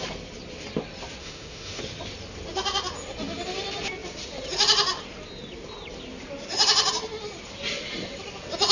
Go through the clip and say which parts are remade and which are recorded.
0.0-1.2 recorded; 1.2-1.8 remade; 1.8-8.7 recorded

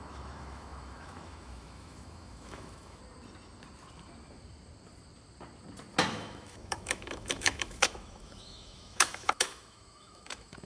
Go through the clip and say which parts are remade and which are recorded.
0.0-3.0 remade; 3.0-6.1 recorded; 6.1-10.7 remade

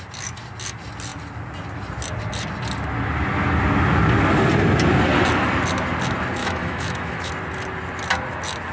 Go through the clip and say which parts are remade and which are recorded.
0.0-6.4 recorded; 6.4-7.3 remade; 7.3-8.7 recorded

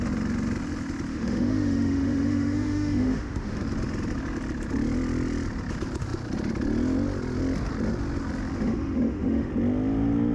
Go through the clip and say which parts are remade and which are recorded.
0.0-1.1 recorded; 1.1-3.6 remade; 3.6-8.6 recorded; 8.6-9.5 remade; 9.5-10.3 recorded

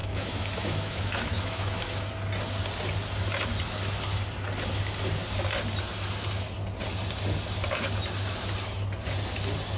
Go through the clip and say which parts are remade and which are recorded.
0.0-2.1 remade; 2.1-9.8 recorded